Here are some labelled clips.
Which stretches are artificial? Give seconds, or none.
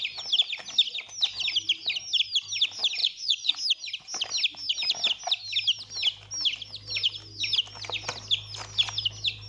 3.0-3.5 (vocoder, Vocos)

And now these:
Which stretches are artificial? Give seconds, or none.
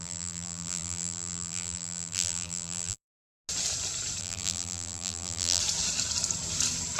0.0-3.2 (vocoder, BigVGAN v2); 4.2-5.6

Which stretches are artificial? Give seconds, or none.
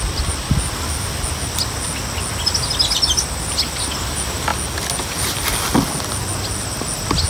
none